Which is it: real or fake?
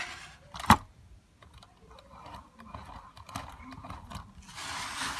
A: real